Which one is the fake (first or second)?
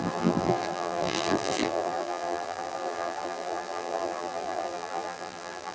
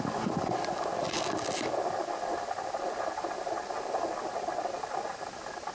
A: first